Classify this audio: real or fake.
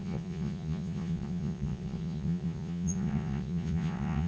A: fake